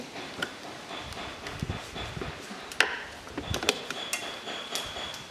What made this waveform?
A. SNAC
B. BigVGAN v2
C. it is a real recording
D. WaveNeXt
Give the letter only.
C